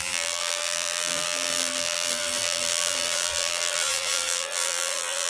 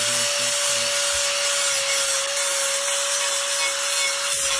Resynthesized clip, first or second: first